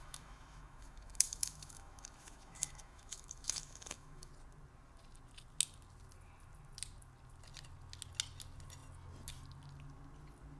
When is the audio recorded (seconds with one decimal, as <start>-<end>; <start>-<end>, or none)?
4.3-10.6